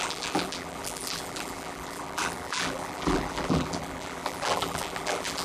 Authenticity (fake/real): fake